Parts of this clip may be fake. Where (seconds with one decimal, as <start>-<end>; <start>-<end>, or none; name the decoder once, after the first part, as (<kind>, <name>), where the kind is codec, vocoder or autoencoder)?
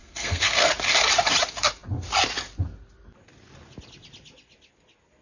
0.0-0.7 (codec, SNAC)